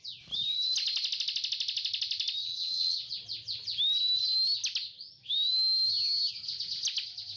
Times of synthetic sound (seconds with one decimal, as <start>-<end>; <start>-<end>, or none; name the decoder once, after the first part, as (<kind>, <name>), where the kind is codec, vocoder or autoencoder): 2.4-3.1 (vocoder, WaveNeXt)